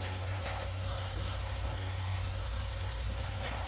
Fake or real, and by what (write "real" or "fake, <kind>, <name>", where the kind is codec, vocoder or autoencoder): fake, codec, SNAC